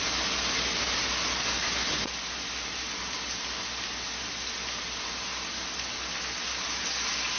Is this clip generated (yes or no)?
no